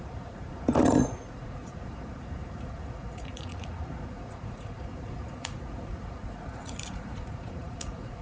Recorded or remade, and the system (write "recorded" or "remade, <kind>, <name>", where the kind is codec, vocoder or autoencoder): remade, vocoder, Vocos